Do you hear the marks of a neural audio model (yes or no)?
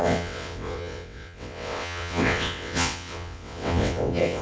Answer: yes